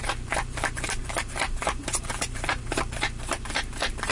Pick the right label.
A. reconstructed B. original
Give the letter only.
A